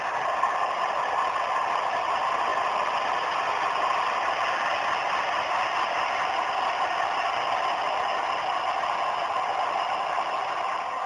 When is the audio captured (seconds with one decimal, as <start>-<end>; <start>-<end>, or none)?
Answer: 0.0-11.1